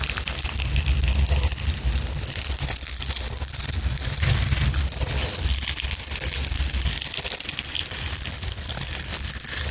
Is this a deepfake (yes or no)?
no